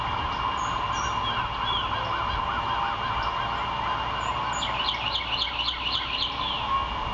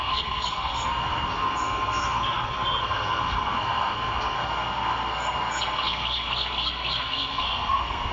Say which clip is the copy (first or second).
second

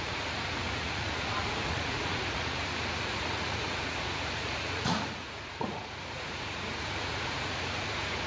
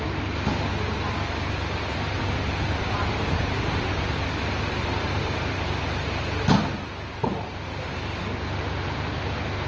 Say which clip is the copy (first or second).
first